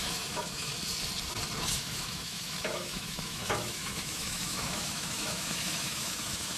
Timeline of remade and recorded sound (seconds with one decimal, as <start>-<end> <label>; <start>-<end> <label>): 0.0-0.7 remade; 0.7-1.7 recorded; 1.7-6.6 remade

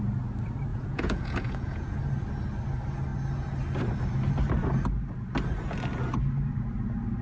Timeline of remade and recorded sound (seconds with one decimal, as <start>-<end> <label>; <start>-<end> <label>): 0.0-0.7 recorded; 0.7-2.0 remade; 2.0-7.2 recorded

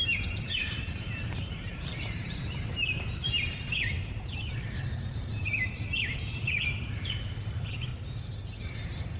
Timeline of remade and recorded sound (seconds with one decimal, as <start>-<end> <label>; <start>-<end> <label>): 0.0-7.9 remade; 7.9-8.6 recorded; 8.6-9.2 remade

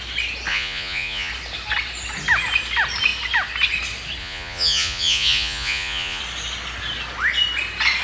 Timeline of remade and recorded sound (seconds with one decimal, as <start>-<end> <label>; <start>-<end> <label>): 0.0-0.5 recorded; 0.5-1.3 remade; 1.3-4.2 recorded; 4.2-6.2 remade; 6.2-8.0 recorded

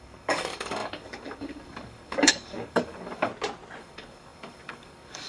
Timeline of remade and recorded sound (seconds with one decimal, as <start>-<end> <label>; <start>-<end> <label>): 0.0-3.3 remade; 3.3-3.8 recorded; 3.8-5.3 remade

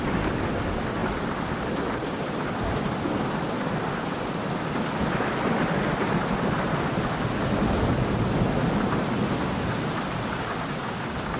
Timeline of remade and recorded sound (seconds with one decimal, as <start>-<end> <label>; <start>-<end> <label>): 0.0-11.4 recorded